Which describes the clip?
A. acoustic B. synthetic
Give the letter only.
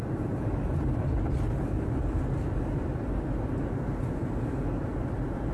A